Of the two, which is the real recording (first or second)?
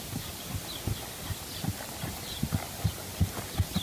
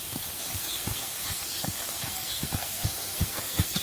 first